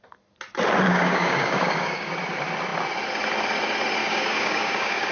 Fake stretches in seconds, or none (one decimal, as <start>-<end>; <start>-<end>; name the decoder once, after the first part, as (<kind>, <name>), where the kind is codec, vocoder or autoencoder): 0.9-2.1 (codec, DAC); 4.0-5.1